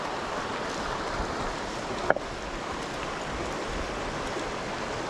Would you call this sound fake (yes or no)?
no